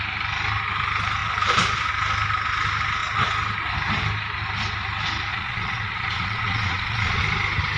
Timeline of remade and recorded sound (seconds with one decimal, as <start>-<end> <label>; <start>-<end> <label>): 0.0-5.3 recorded; 5.3-7.2 remade; 7.2-7.8 recorded